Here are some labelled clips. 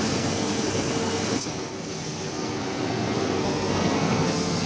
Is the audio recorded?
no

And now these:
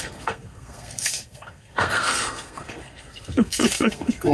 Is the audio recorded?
no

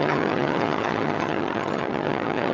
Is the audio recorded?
no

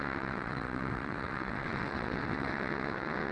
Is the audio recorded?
no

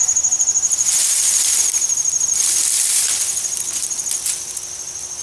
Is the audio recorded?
yes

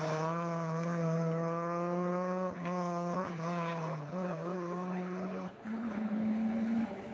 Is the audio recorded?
no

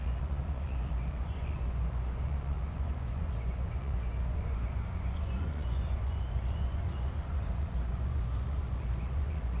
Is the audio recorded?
no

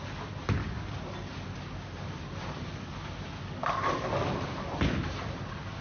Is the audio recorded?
yes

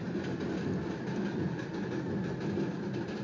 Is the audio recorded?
yes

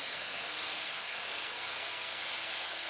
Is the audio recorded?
no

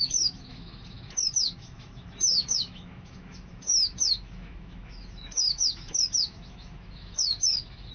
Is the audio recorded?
no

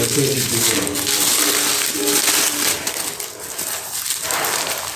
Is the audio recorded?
yes